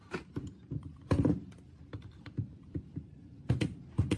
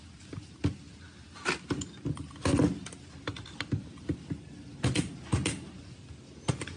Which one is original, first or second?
second